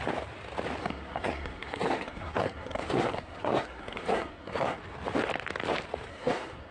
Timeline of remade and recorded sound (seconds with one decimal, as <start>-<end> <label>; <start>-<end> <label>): 0.0-0.8 recorded; 0.8-4.8 remade; 4.8-6.1 recorded; 6.1-6.7 remade